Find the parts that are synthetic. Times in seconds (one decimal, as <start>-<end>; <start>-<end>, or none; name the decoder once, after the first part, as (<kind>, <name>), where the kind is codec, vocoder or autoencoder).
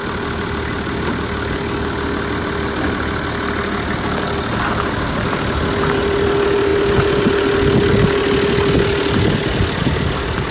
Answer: none